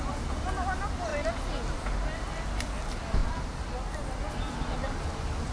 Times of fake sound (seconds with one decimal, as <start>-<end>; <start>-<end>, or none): none